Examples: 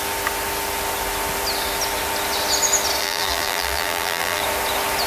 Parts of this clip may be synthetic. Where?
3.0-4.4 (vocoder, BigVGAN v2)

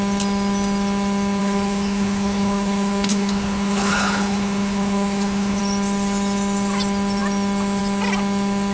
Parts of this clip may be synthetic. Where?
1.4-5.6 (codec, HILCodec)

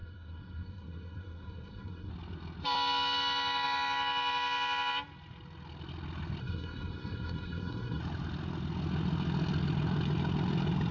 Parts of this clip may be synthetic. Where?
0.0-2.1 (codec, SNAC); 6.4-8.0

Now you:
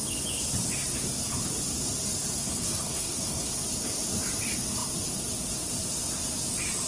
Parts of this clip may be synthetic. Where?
2.4-3.5 (codec, SNAC)